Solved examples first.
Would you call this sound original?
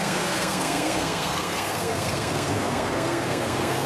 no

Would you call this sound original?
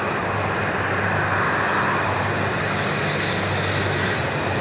yes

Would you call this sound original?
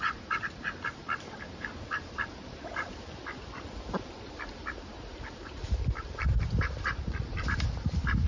no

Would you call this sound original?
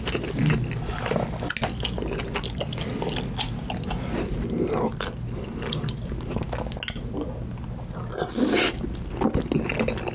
yes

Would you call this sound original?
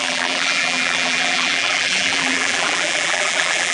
no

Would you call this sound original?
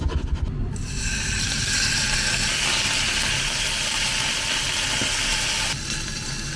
yes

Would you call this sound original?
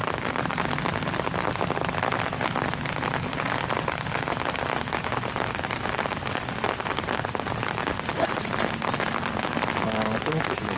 yes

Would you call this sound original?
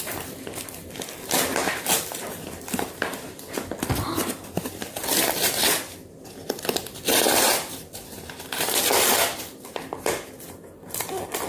no